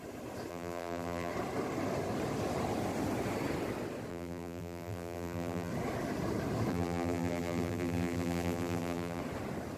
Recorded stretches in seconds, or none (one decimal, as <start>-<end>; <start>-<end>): 0.0-0.5; 1.3-4.1; 5.7-6.7; 9.2-9.8